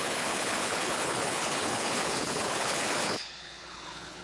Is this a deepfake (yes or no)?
yes